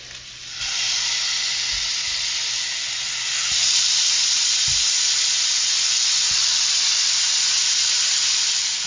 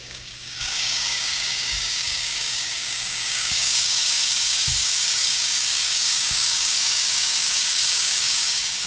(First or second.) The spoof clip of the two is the second